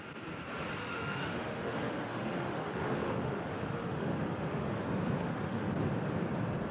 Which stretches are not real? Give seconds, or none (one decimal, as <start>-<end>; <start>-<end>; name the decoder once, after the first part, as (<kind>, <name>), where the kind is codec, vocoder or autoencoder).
0.8-4.8 (autoencoder, DAC-VAE); 5.2-5.7